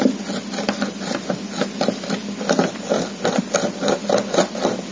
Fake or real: real